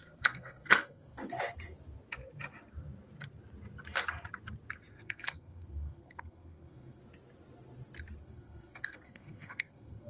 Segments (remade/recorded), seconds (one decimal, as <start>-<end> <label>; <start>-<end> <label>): 0.0-1.2 remade; 1.2-4.9 recorded; 4.9-7.0 remade; 7.0-8.2 recorded; 8.2-10.1 remade